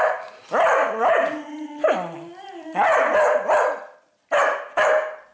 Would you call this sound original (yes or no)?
yes